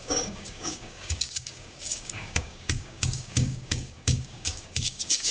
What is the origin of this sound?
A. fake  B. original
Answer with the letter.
A